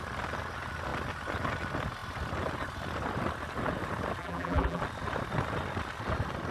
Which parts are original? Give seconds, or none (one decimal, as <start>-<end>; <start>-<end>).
0.0-4.2; 4.8-6.5